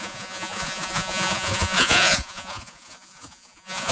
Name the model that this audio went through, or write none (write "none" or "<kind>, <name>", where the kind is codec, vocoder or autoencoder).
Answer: vocoder, Vocos